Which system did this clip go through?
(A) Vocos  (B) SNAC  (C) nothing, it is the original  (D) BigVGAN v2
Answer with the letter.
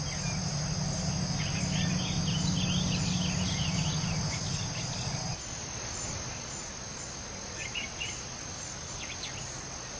C